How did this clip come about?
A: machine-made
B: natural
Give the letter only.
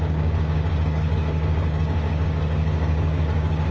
A